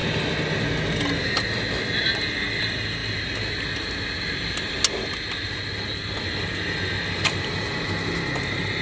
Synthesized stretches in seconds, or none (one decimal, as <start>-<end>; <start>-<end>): none